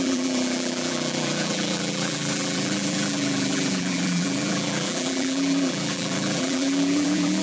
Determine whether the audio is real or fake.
fake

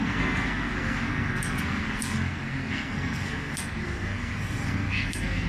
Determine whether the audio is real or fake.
fake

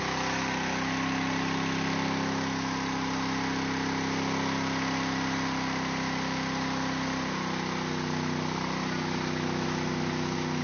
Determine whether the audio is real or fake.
real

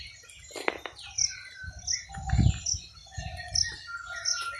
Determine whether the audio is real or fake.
real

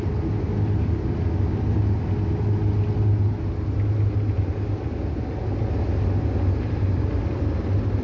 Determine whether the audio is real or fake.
real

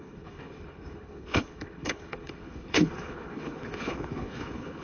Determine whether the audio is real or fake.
fake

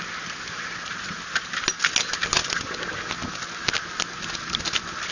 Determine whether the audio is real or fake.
real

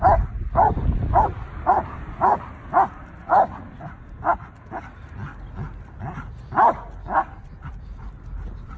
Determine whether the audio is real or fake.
real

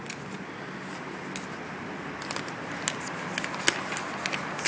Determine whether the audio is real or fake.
real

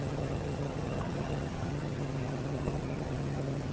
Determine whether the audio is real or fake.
fake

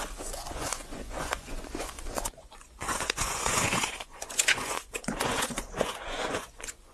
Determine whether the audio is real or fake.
fake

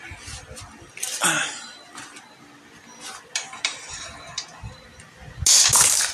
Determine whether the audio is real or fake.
real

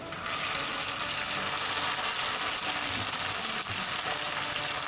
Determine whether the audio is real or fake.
real